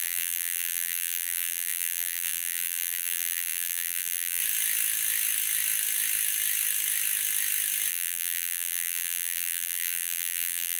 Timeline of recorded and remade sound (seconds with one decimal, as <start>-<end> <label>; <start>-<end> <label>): 0.0-4.4 remade; 4.4-7.9 recorded; 7.9-10.8 remade